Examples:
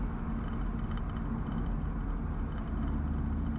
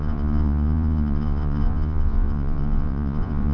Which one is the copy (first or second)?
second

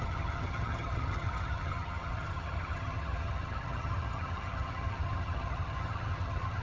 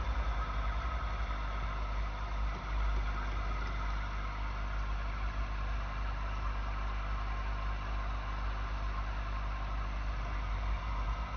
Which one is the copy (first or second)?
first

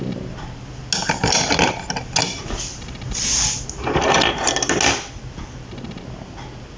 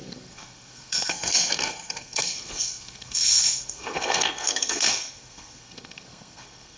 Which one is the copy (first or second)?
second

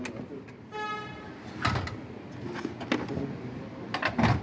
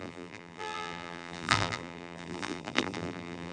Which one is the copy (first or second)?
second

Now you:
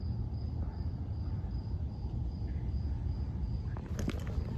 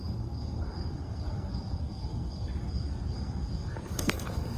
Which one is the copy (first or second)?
second